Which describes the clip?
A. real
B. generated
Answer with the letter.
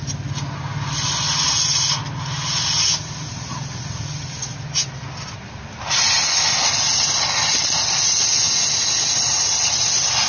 A